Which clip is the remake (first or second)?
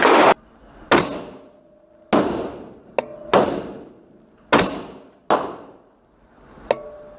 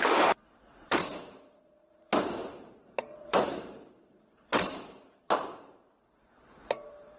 second